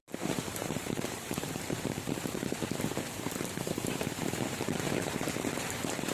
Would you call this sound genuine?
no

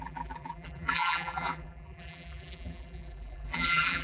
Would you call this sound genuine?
no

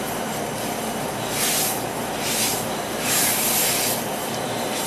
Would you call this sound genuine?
no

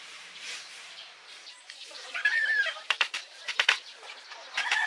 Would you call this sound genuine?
no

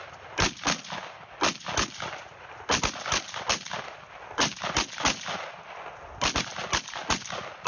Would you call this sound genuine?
yes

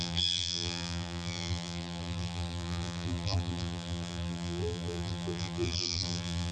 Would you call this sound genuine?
no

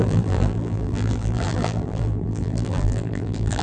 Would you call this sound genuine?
no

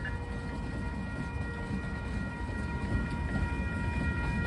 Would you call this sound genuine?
yes